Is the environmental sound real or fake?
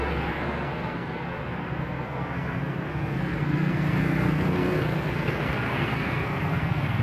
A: fake